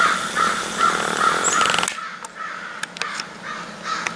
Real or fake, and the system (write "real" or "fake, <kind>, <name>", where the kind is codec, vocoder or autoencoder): real